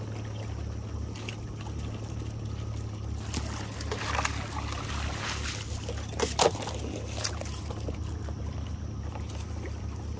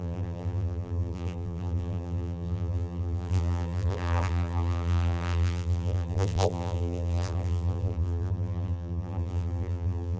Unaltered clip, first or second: first